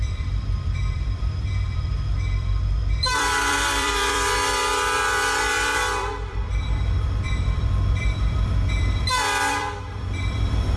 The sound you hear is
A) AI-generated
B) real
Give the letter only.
A